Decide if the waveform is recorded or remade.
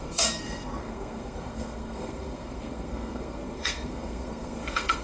remade